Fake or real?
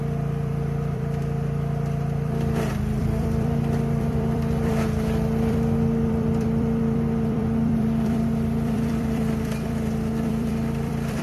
fake